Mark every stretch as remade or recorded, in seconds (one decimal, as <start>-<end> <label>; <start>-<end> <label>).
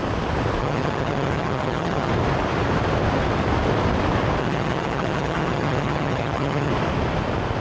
0.0-0.6 recorded; 0.6-2.1 remade; 2.1-4.4 recorded; 4.4-6.7 remade; 6.7-7.6 recorded